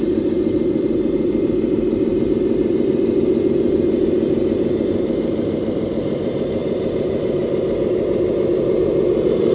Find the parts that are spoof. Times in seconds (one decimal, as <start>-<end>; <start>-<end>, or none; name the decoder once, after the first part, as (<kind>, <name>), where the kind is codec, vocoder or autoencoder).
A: 0.0-9.5 (vocoder, BigVGAN v2)